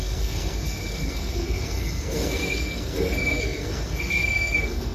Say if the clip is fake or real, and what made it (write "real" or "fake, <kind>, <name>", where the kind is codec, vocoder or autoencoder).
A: fake, codec, SNAC